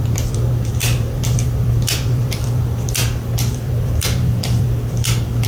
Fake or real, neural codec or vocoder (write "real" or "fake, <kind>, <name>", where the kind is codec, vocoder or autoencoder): fake, vocoder, BigVGAN v2